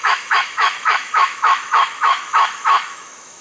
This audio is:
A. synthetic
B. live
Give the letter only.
A